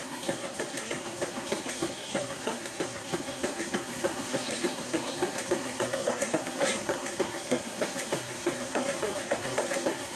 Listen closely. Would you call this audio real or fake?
fake